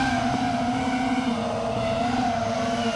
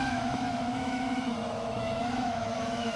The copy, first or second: second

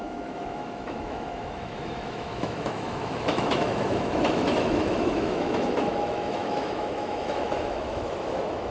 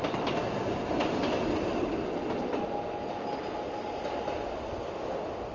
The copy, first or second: first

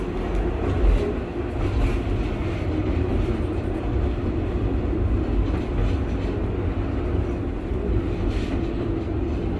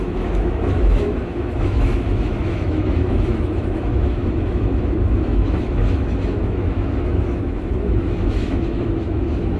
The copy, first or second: second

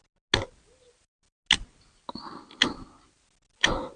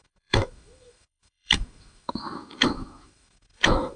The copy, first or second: second